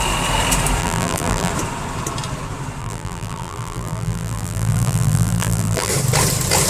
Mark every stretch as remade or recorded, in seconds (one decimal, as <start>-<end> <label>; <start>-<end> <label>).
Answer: 0.0-0.8 recorded; 0.8-1.5 remade; 1.5-2.8 recorded; 2.8-5.9 remade; 5.9-6.7 recorded